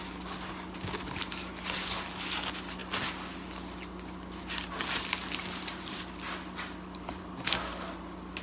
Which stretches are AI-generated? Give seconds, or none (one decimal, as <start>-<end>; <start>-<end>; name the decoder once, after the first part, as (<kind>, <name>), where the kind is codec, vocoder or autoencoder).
none